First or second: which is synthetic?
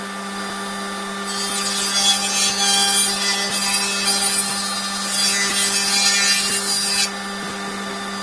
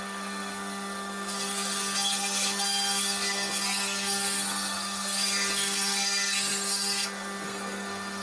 second